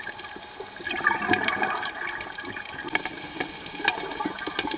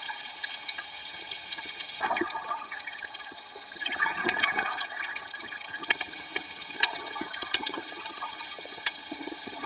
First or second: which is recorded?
first